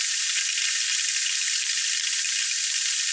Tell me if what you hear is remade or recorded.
recorded